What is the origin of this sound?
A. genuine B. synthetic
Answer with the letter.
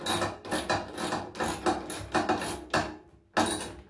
A